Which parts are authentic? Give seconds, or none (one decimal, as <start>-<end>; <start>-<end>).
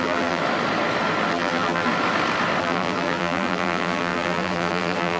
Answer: 0.4-1.3; 1.9-2.6